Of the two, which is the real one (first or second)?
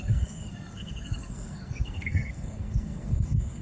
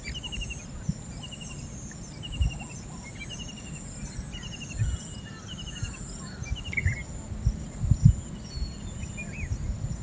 second